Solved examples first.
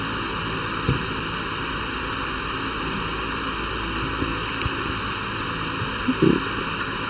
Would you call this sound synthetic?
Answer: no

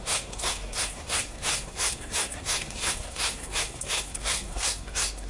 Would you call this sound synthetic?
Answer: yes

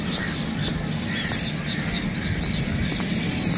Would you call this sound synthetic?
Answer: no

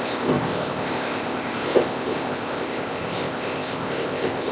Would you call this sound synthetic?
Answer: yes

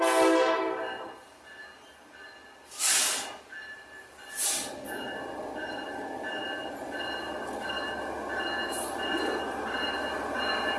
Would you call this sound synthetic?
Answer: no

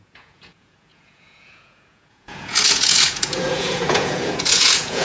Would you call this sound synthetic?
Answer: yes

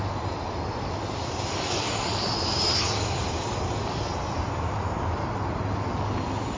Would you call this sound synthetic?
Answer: no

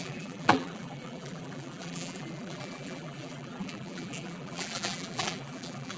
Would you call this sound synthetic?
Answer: yes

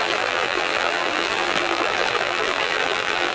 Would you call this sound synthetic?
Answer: yes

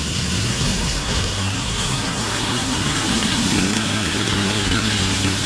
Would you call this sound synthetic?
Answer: yes